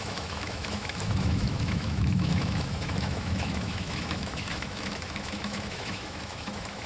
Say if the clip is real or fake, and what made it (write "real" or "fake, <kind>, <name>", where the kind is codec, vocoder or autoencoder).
fake, autoencoder, DAC-VAE